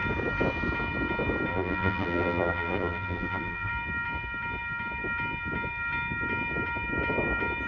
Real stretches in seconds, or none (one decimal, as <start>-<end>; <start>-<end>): 0.0-1.5; 3.7-7.7